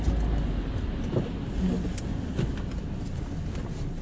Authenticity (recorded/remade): recorded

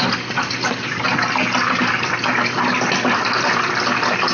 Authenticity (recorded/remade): recorded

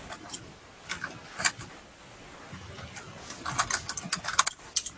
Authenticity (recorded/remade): recorded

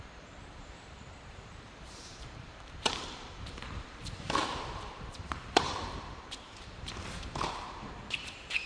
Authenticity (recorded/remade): remade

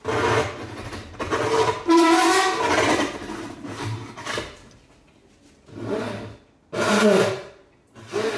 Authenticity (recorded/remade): recorded